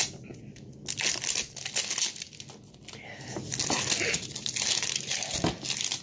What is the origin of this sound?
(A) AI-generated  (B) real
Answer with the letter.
B